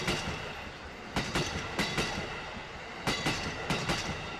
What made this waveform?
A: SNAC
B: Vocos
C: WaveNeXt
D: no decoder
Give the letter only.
D